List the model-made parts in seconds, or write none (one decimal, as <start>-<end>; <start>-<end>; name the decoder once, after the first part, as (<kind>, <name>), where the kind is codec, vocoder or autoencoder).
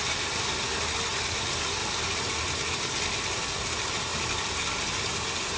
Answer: 0.0-0.6 (vocoder, BigVGAN v2); 1.8-3.0; 4.1-5.1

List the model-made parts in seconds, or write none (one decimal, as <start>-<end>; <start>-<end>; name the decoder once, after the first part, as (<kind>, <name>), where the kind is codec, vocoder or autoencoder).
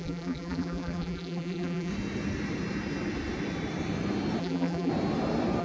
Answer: 0.0-1.9 (vocoder, BigVGAN v2); 4.4-4.9